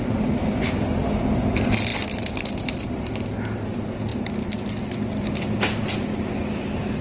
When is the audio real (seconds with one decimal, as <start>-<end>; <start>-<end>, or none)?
0.0-7.0